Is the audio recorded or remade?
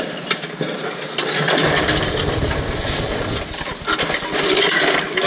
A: recorded